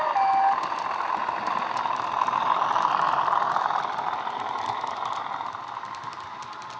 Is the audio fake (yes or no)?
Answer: no